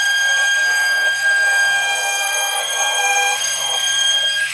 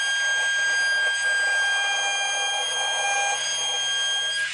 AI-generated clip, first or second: first